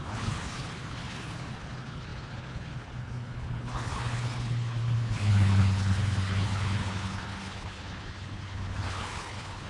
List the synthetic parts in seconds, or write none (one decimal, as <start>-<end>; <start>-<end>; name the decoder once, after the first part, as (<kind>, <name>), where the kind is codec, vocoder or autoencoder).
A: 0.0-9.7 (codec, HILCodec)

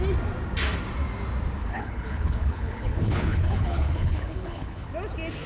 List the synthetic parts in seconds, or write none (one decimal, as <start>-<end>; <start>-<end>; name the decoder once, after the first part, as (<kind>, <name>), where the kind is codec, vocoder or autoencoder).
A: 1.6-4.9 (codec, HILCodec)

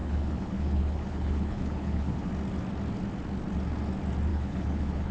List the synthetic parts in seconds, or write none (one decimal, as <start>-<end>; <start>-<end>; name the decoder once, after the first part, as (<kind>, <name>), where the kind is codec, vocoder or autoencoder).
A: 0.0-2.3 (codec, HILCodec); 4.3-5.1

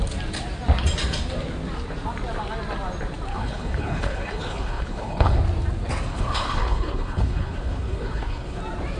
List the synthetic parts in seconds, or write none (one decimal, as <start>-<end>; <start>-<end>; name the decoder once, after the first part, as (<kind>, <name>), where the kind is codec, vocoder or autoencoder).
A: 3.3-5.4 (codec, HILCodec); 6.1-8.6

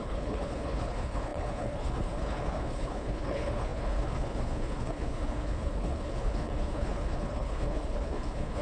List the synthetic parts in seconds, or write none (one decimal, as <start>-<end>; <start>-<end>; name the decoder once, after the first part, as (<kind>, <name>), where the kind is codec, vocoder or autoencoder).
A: 0.0-8.6 (codec, HILCodec)

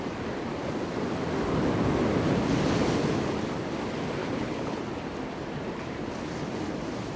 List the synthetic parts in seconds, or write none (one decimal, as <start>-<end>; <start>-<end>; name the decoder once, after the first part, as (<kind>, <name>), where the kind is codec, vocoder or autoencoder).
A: 4.2-4.8 (codec, HILCodec)

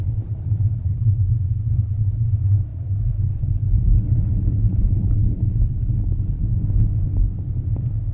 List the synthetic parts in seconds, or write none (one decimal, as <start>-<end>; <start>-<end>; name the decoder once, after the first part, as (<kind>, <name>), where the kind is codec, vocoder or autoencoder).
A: 0.0-6.4 (codec, HILCodec)

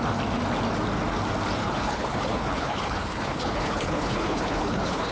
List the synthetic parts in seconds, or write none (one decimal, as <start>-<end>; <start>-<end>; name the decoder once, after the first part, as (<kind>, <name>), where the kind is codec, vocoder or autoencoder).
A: 1.6-5.1 (codec, HILCodec)